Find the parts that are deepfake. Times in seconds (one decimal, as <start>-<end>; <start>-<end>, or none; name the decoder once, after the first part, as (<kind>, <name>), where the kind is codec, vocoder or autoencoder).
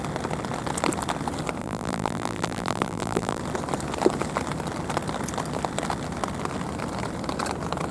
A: 1.6-3.4 (vocoder, BigVGAN v2)